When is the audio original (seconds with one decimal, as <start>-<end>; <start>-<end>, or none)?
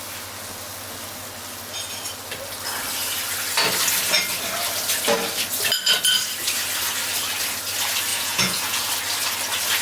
0.0-8.1; 8.9-9.8